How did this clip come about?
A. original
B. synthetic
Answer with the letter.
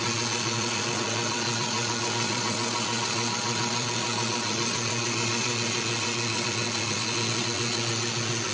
B